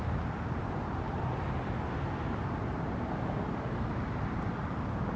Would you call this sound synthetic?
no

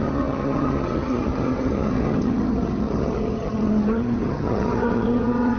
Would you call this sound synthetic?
yes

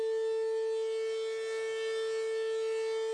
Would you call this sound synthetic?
no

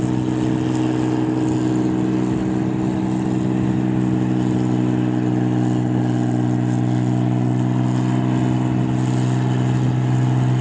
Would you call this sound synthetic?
no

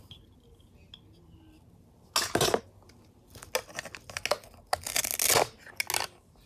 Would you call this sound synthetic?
no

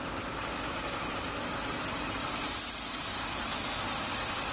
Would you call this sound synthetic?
no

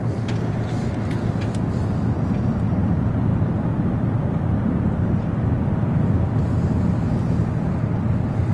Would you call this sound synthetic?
no